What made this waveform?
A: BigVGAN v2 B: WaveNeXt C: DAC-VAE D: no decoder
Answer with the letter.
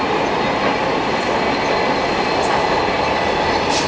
D